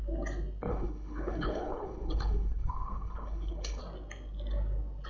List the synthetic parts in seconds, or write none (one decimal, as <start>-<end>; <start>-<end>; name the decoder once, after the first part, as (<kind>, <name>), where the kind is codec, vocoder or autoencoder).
0.7-3.8 (codec, HILCodec)